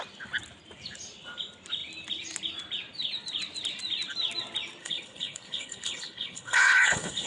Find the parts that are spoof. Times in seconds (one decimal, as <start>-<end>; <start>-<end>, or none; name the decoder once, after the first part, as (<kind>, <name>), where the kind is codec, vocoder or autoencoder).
4.8-7.3 (codec, HILCodec)